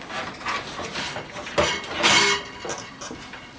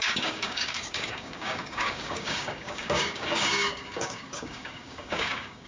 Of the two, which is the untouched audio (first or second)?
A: first